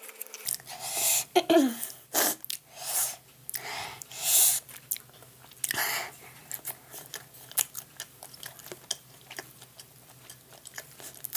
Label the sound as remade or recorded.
recorded